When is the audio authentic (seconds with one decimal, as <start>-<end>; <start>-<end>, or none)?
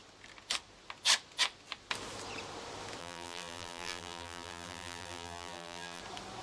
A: 0.0-3.0; 6.0-6.4